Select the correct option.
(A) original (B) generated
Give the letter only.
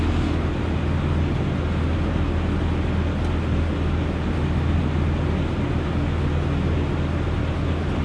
A